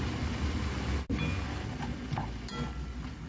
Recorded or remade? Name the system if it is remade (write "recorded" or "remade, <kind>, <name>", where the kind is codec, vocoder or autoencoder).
recorded